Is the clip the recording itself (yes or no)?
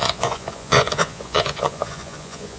no